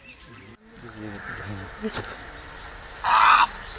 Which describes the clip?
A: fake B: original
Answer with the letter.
B